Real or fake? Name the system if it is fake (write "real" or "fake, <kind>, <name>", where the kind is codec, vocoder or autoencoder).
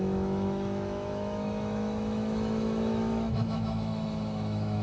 fake, autoencoder, DAC-VAE